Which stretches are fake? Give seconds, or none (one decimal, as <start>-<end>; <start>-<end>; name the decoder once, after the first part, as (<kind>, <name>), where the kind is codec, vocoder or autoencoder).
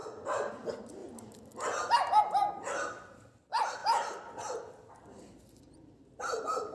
none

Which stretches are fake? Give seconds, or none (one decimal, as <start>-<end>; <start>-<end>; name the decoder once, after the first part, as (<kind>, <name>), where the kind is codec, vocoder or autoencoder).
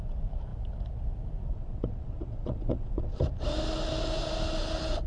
1.5-3.2 (vocoder, WaveNeXt)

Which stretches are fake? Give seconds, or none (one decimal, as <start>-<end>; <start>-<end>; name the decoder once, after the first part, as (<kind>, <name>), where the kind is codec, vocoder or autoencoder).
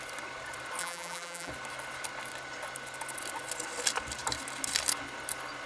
0.8-1.5 (vocoder, BigVGAN v2)